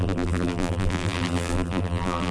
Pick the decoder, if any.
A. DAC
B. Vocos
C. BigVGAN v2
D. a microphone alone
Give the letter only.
C